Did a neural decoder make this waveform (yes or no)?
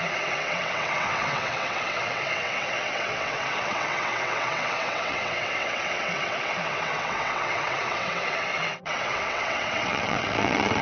yes